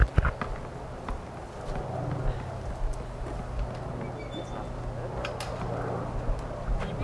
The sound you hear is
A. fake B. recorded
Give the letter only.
B